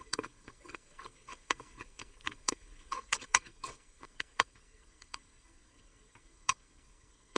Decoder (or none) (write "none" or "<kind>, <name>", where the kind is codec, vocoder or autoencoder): codec, SNAC